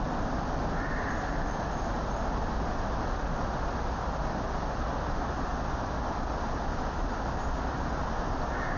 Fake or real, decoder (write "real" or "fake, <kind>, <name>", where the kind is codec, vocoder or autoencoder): real